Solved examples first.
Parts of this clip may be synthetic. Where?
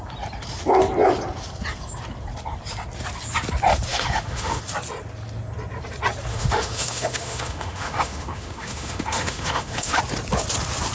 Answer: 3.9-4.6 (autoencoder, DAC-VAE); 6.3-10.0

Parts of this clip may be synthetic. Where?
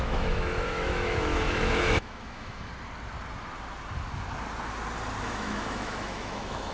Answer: 0.0-2.7 (autoencoder, DAC-VAE); 5.2-6.7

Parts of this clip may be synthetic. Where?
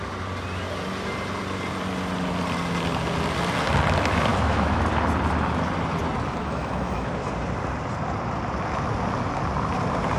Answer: 4.3-4.8 (autoencoder, DAC-VAE); 6.4-7.1